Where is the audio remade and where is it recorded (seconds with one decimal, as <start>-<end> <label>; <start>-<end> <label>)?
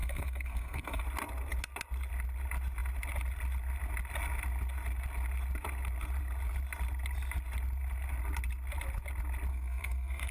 0.0-1.0 remade; 1.0-9.5 recorded; 9.5-10.3 remade